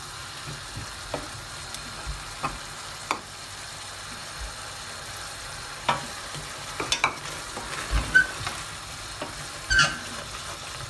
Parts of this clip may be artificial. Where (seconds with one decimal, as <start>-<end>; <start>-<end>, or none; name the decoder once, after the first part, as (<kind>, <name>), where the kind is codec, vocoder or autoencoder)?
none